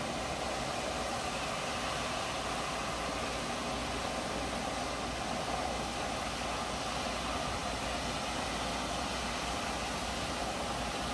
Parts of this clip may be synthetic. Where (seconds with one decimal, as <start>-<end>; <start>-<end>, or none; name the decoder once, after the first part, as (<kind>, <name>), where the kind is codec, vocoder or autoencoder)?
none